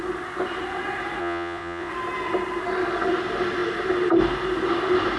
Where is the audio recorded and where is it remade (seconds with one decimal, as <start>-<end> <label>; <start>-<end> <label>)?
0.0-1.2 recorded; 1.2-1.9 remade; 1.9-5.2 recorded